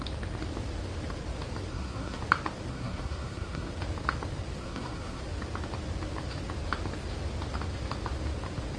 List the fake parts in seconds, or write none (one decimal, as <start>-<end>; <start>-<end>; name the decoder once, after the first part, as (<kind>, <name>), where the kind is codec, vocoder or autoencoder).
1.7-2.2 (codec, SNAC); 2.7-3.7; 4.6-5.2